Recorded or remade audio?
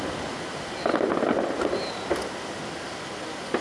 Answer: recorded